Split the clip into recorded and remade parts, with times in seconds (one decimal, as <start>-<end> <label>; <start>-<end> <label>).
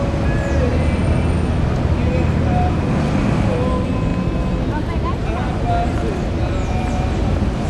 0.0-7.7 recorded